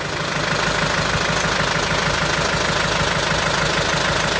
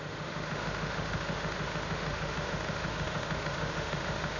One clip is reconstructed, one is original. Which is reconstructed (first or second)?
second